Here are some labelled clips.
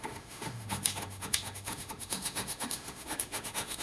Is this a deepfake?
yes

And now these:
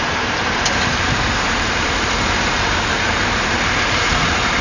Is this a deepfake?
yes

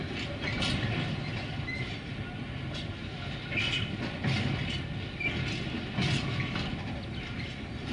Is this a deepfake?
no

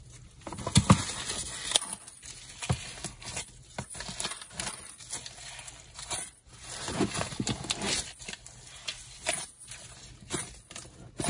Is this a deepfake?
no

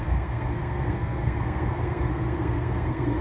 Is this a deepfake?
yes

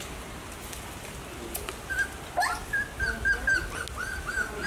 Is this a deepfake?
no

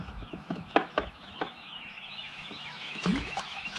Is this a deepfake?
yes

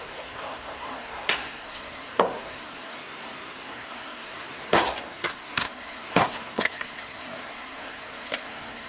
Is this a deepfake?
yes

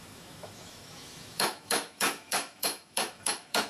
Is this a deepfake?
yes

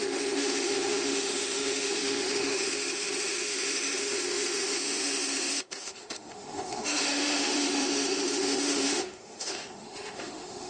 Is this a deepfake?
yes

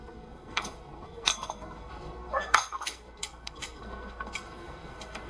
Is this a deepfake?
yes